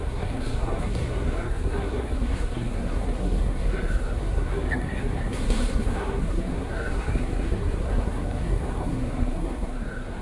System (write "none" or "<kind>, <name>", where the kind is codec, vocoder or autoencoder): codec, SNAC